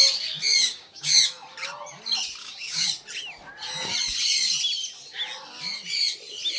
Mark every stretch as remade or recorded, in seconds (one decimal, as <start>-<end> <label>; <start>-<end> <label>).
0.0-0.5 recorded; 0.5-1.2 remade; 1.2-2.4 recorded; 2.4-2.9 remade; 2.9-6.6 recorded

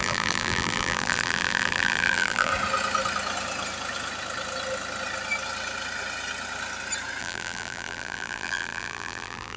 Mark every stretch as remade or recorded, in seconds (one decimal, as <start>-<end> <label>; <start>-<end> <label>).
0.0-2.5 remade; 2.5-7.2 recorded; 7.2-9.6 remade

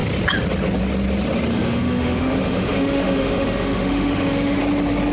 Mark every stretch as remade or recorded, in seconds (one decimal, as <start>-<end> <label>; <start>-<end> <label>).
0.0-1.5 recorded; 1.5-4.6 remade; 4.6-5.1 recorded

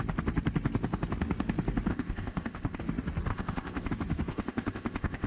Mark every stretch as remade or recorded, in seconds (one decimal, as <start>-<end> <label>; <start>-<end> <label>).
0.0-1.9 recorded; 1.9-2.8 remade; 2.8-3.3 recorded; 3.3-3.9 remade; 3.9-4.3 recorded; 4.3-5.3 remade

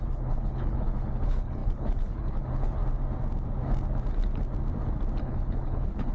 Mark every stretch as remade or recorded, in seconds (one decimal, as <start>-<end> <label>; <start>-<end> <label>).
0.0-2.8 remade; 2.8-5.2 recorded; 5.2-6.1 remade

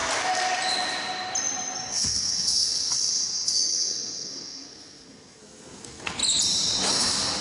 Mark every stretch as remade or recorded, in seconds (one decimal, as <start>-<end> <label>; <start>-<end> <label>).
0.0-1.9 recorded; 1.9-6.2 remade; 6.2-6.9 recorded; 6.9-7.4 remade

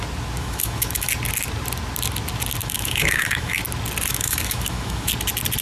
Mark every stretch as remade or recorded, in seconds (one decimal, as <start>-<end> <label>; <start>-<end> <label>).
0.0-0.4 recorded; 0.4-1.1 remade; 1.1-2.6 recorded; 2.6-3.6 remade; 3.6-4.1 recorded; 4.1-5.1 remade; 5.1-5.6 recorded

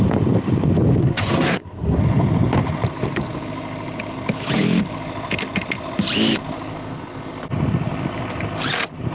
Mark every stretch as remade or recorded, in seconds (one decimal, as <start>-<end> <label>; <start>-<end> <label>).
0.0-1.0 recorded; 1.0-2.0 remade; 2.0-9.1 recorded